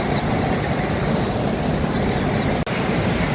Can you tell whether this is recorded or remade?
recorded